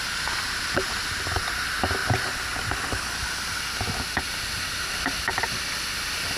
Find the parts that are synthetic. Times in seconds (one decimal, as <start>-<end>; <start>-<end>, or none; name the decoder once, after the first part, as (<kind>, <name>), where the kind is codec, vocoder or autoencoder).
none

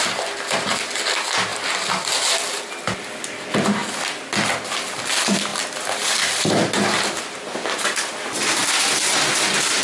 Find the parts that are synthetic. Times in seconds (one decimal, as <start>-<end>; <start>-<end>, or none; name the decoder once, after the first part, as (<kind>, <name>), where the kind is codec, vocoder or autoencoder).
5.5-7.2 (vocoder, BigVGAN v2)

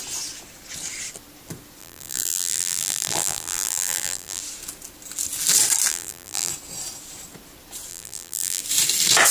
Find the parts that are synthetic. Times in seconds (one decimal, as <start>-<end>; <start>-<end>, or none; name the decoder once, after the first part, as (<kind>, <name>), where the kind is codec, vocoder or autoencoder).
1.8-4.4 (vocoder, BigVGAN v2); 5.9-6.5; 7.9-8.6

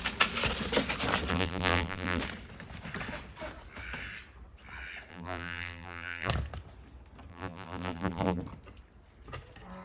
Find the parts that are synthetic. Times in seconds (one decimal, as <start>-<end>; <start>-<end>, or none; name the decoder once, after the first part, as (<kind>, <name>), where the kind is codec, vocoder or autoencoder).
1.3-2.2 (vocoder, BigVGAN v2); 5.1-6.3; 7.3-8.4

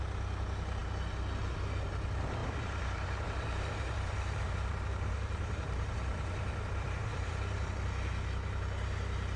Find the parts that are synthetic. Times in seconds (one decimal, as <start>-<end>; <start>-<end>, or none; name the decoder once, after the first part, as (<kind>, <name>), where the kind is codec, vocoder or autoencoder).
2.4-7.7 (vocoder, BigVGAN v2)